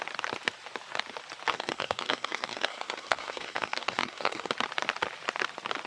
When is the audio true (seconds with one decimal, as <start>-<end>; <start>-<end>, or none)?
0.0-1.5; 4.5-5.9